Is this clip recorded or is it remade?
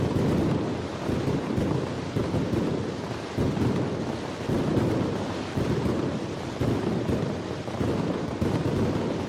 recorded